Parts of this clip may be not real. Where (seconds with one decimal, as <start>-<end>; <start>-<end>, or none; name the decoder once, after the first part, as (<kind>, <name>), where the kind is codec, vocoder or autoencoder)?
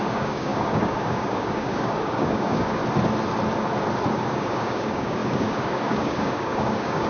0.0-2.8 (codec, DAC); 4.1-7.1